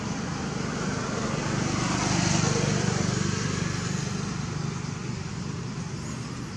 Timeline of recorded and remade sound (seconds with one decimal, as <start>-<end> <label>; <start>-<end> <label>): 0.0-6.6 recorded